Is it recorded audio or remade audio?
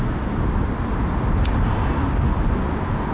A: recorded